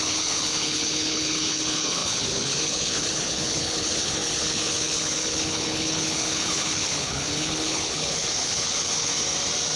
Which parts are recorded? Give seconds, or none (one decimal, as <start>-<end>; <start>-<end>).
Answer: 9.1-9.8